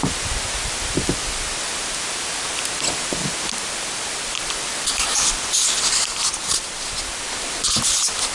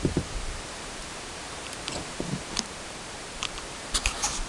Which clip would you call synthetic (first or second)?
second